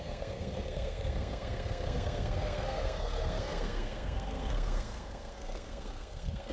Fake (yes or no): yes